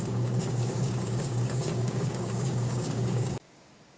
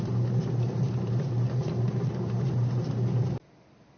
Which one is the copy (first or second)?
first